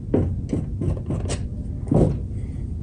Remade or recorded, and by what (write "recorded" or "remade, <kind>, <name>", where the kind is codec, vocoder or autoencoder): recorded